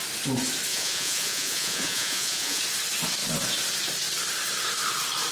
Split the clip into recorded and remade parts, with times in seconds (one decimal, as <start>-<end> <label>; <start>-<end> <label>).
0.0-0.7 recorded; 0.7-2.6 remade; 2.6-5.3 recorded